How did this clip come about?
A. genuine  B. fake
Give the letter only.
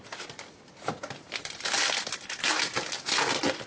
A